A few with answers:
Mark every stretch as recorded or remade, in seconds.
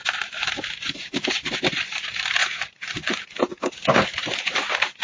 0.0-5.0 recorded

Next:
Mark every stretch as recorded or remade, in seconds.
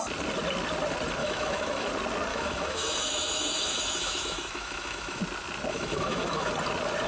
0.0-1.2 recorded; 1.2-1.9 remade; 1.9-2.3 recorded; 2.3-5.2 remade; 5.2-5.7 recorded; 5.7-6.5 remade; 6.5-7.1 recorded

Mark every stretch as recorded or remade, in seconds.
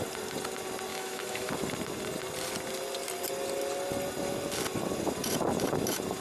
0.0-0.9 recorded; 0.9-1.5 remade; 1.5-6.2 recorded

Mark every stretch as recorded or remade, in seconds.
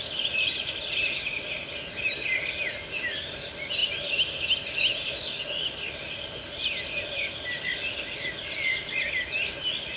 0.0-10.0 recorded